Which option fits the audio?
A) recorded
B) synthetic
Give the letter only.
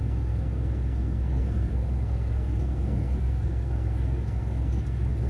B